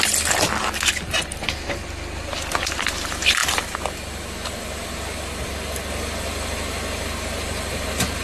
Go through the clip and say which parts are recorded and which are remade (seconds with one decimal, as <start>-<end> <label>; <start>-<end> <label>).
0.0-8.2 recorded